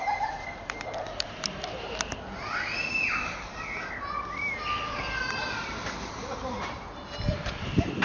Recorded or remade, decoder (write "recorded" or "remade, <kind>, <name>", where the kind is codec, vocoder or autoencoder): recorded